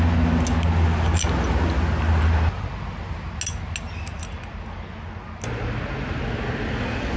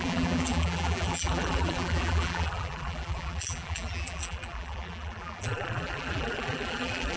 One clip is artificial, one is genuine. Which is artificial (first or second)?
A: second